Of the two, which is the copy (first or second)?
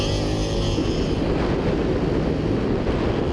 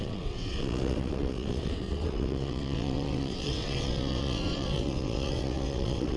second